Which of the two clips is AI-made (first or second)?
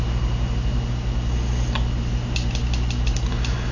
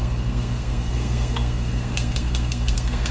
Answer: second